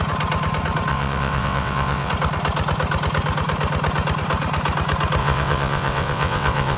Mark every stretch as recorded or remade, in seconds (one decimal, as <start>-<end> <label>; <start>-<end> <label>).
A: 0.0-0.9 recorded; 0.9-2.1 remade; 2.1-5.2 recorded; 5.2-6.8 remade